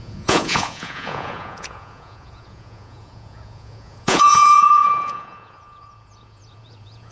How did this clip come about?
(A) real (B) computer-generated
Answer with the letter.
B